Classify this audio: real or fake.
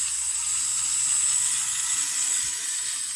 real